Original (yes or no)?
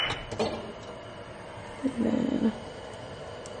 yes